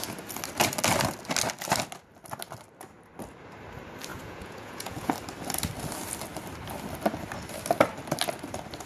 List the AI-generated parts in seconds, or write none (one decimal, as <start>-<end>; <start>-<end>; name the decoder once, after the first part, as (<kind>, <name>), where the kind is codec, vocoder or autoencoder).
4.1-5.1 (vocoder, Vocos)